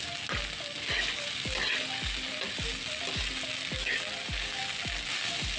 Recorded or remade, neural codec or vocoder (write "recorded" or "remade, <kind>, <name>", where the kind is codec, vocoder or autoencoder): recorded